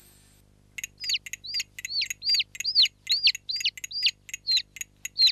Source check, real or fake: real